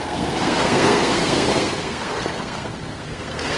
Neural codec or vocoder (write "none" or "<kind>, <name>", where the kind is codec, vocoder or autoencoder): codec, SNAC